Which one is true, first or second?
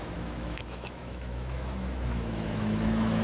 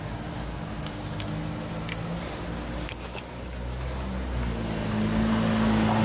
second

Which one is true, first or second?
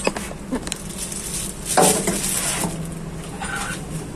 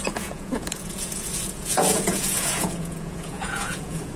first